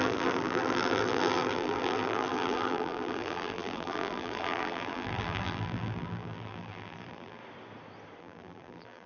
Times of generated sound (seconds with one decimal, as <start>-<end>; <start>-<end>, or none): 0.0-7.4; 8.2-9.1